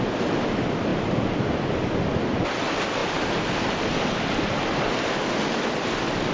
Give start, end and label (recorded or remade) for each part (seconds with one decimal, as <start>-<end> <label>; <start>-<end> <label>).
0.0-6.3 recorded